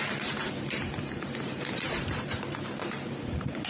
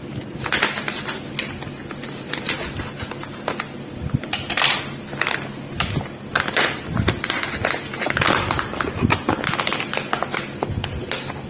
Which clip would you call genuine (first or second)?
second